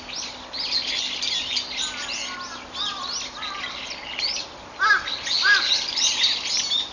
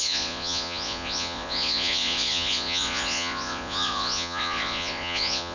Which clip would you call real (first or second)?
first